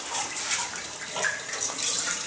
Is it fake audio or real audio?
real